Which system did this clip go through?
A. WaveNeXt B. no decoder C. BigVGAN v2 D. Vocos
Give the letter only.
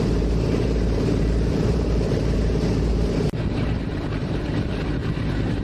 C